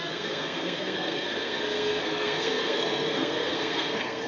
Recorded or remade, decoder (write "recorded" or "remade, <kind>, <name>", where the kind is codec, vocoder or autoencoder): remade, codec, SNAC